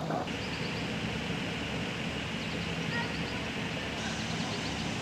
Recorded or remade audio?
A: recorded